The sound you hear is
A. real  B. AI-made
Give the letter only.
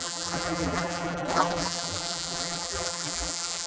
B